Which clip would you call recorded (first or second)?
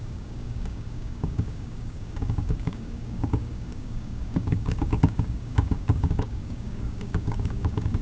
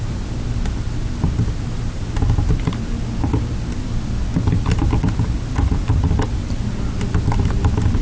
second